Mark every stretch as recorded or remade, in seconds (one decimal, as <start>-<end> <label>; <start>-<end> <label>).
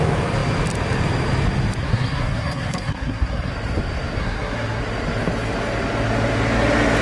0.0-1.8 recorded; 1.8-3.5 remade; 3.5-4.2 recorded; 4.2-4.8 remade; 4.8-7.0 recorded